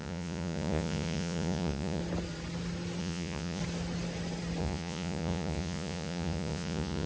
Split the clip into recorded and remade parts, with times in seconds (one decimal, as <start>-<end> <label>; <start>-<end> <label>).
0.0-2.0 remade; 2.0-3.0 recorded; 3.0-3.6 remade; 3.6-4.6 recorded; 4.6-7.1 remade